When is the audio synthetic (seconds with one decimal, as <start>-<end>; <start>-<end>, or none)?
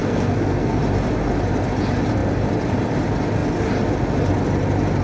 0.0-0.8